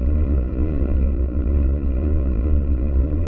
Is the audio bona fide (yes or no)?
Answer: no